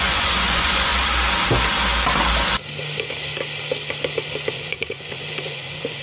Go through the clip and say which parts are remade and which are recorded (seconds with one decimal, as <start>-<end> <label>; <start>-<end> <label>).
0.0-0.9 remade; 0.9-4.5 recorded; 4.5-6.0 remade